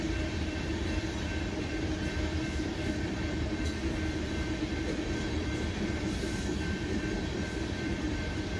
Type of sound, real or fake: fake